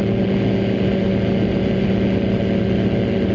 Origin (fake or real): real